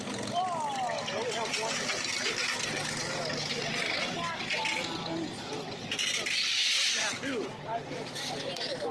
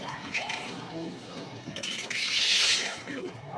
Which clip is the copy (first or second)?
second